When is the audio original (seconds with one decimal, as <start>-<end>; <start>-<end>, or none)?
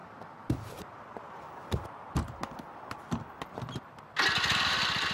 0.0-5.1